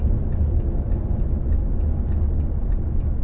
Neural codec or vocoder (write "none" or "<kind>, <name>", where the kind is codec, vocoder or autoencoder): none